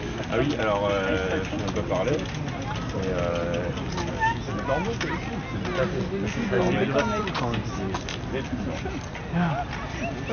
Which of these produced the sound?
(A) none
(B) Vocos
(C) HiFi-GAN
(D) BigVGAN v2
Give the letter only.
A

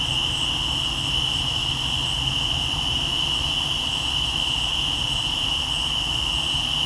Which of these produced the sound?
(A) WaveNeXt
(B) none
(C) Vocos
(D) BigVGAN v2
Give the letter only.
B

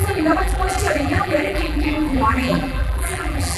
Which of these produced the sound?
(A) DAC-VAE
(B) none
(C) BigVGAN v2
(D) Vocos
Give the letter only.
C